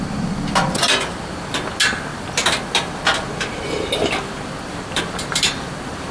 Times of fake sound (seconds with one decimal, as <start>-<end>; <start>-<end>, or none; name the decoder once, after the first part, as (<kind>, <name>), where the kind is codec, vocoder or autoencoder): none